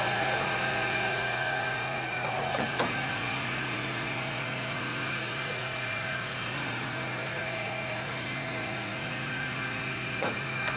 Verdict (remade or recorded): remade